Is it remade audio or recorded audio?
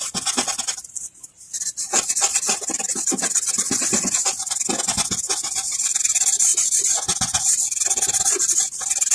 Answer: recorded